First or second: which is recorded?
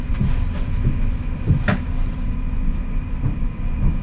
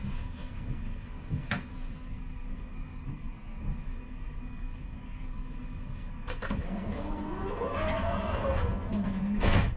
first